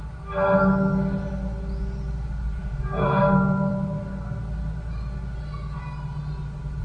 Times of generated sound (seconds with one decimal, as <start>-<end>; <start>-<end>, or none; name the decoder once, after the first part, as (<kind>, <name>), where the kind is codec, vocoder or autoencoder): 2.6-3.2 (vocoder, Vocos)